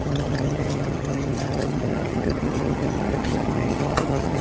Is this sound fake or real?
fake